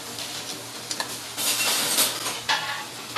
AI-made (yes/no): no